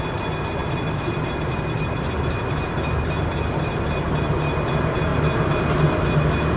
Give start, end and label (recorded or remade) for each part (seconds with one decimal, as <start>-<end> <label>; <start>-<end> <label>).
0.0-0.6 recorded; 0.6-4.3 remade; 4.3-6.6 recorded